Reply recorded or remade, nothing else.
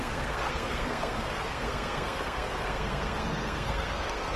remade